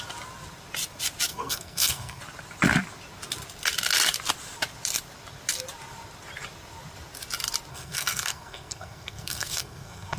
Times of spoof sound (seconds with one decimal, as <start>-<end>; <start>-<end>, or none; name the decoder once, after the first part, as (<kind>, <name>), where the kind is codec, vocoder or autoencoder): 1.3-2.2 (codec, SNAC); 7.7-10.2